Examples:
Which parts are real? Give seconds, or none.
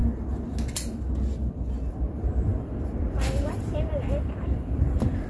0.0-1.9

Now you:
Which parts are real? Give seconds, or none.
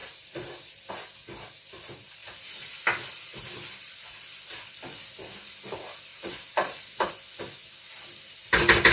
0.9-2.2; 2.8-3.3; 4.2-6.1; 7.1-8.9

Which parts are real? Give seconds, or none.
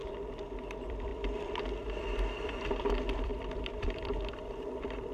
none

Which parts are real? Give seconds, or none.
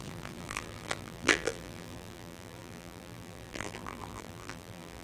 none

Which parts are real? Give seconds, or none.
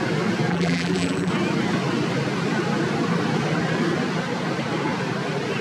0.0-0.5; 1.3-5.6